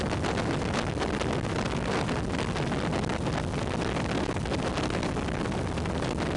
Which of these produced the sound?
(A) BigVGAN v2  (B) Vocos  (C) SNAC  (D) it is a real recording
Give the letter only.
D